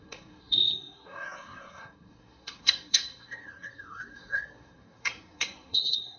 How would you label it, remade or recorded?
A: remade